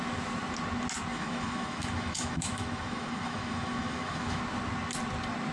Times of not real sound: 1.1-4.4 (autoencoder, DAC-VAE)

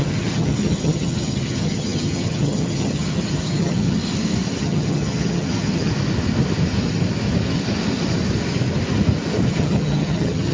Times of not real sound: 0.0-4.0 (vocoder, HiFi-GAN); 4.6-5.9; 9.5-10.5